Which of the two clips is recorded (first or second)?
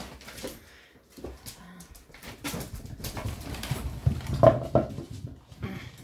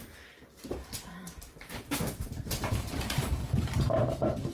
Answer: first